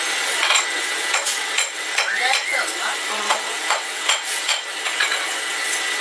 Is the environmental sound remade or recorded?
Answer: remade